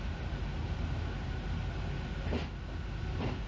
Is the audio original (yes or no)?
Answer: yes